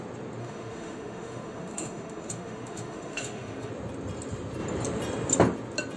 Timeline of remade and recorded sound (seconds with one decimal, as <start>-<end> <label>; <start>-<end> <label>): 0.0-0.4 recorded; 0.4-3.7 remade; 3.7-6.0 recorded